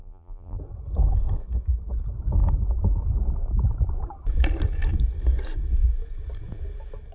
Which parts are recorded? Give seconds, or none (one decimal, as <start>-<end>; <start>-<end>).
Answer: 0.6-7.1